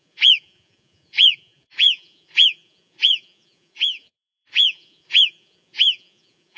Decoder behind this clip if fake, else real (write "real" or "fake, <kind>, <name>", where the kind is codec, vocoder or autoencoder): fake, vocoder, Vocos